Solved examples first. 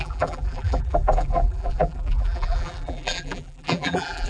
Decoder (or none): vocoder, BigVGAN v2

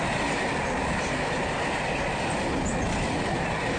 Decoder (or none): vocoder, BigVGAN v2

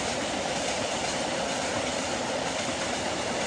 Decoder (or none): vocoder, BigVGAN v2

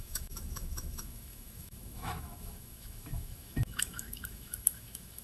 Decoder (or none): autoencoder, DAC-VAE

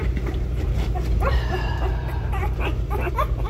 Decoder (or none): vocoder, BigVGAN v2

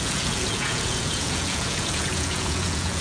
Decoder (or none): vocoder, Vocos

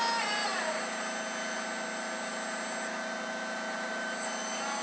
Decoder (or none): none